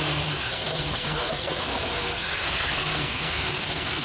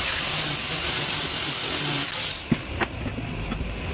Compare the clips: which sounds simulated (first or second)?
first